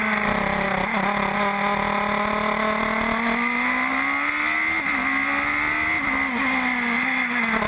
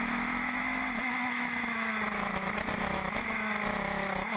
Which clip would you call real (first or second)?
first